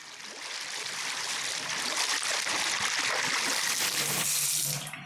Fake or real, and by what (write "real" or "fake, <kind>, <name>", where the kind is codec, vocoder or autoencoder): real